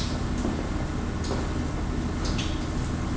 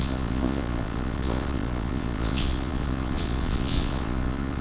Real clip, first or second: first